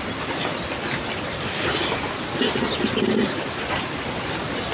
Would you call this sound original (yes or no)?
yes